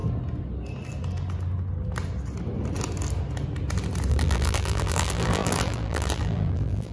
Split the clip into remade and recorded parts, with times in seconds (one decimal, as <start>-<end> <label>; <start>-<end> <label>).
0.0-4.1 recorded; 4.1-6.9 remade